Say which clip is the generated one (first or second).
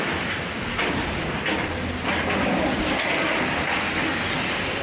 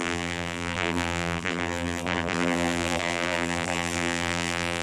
second